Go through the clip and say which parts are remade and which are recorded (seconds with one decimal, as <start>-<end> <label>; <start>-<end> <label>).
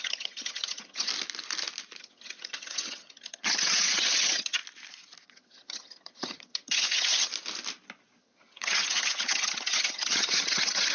0.0-1.1 remade; 1.1-2.0 recorded; 2.0-4.6 remade; 4.6-5.3 recorded; 5.3-7.3 remade; 7.3-8.2 recorded; 8.2-10.9 remade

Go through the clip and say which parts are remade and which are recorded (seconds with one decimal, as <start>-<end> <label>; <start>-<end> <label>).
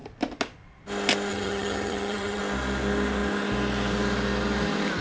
0.0-1.3 recorded; 1.3-2.4 remade; 2.4-5.0 recorded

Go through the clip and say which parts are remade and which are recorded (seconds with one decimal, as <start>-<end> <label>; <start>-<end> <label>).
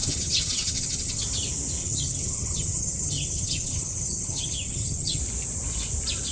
0.0-1.2 remade; 1.2-1.8 recorded; 1.8-5.2 remade; 5.2-6.3 recorded